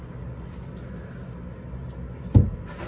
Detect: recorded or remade recorded